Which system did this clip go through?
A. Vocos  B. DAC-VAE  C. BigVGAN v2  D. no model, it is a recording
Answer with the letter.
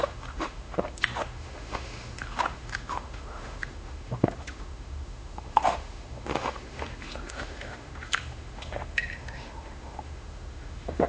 B